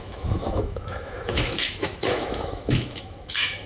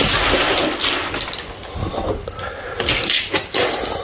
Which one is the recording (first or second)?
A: second